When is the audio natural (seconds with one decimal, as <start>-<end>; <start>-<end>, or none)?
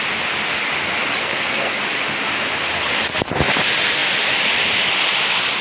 0.0-1.2; 1.8-5.6